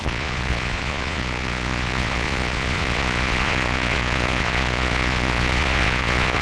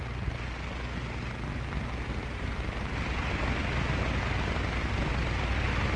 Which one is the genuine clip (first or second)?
second